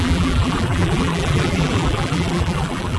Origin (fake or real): fake